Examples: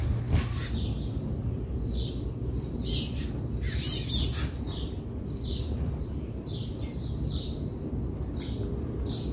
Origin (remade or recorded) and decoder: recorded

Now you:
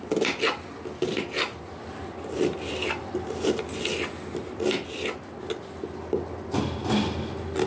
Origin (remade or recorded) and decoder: recorded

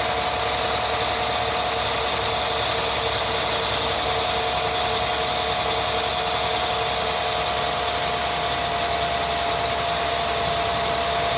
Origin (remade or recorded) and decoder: recorded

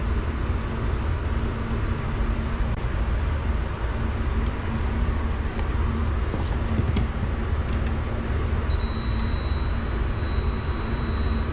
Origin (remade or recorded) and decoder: recorded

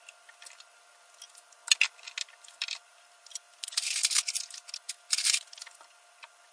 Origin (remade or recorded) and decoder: recorded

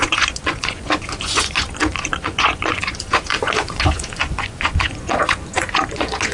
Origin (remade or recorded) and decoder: remade, vocoder, Vocos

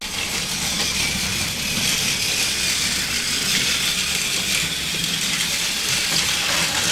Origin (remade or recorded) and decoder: recorded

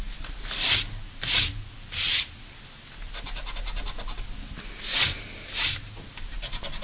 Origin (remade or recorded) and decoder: recorded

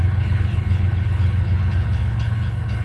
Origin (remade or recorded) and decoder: remade, codec, HILCodec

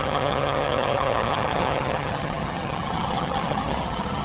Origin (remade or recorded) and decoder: remade, vocoder, HiFi-GAN